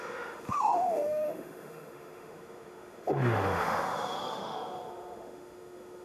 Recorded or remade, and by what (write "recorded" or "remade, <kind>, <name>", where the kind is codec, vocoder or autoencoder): remade, autoencoder, DAC-VAE